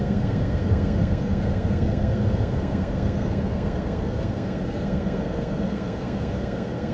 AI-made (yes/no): yes